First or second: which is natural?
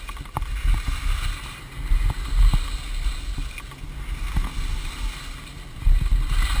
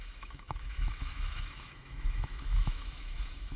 first